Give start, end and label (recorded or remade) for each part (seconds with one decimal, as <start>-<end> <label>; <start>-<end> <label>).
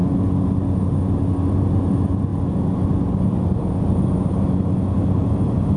0.0-5.8 recorded